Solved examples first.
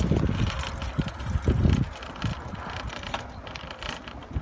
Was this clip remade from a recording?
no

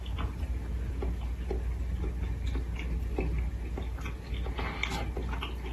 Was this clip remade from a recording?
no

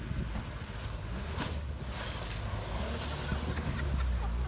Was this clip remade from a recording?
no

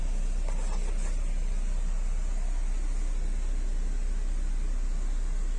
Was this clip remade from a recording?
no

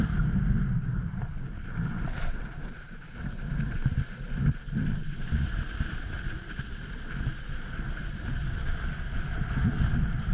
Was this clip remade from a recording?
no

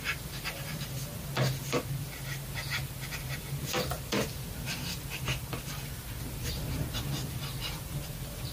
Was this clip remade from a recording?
yes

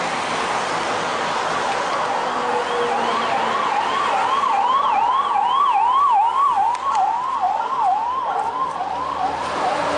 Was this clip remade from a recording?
no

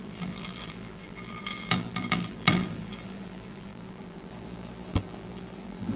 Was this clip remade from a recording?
yes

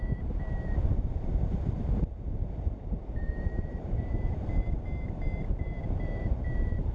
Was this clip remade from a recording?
yes